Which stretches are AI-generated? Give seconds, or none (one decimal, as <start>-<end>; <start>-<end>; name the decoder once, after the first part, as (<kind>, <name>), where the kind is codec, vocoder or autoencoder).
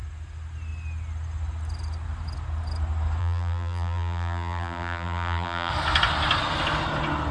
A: 3.2-5.7 (vocoder, BigVGAN v2)